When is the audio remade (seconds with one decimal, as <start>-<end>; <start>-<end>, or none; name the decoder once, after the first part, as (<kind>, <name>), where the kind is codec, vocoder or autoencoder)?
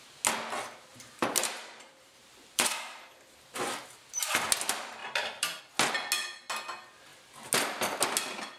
0.9-3.0 (vocoder, BigVGAN v2); 5.0-5.6